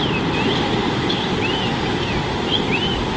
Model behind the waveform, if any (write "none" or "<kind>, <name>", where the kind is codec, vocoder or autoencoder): none